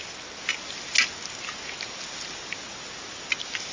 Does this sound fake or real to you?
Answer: real